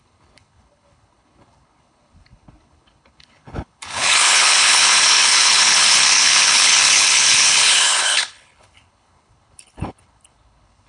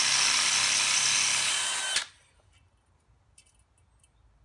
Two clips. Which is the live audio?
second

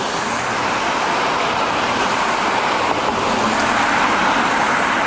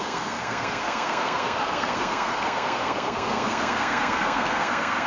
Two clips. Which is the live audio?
first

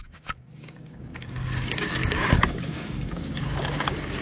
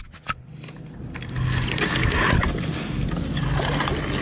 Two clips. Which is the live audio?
second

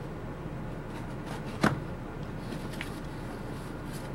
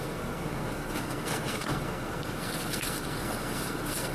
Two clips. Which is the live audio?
first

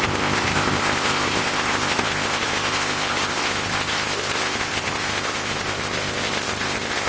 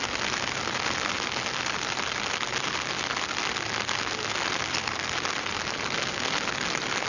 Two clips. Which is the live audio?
second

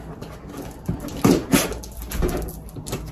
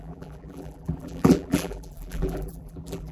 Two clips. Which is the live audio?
first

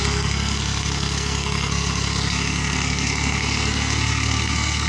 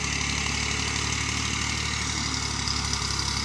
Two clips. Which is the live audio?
second